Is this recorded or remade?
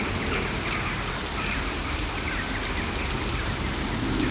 recorded